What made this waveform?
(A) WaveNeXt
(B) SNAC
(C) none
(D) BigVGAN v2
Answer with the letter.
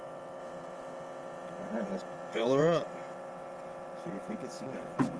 A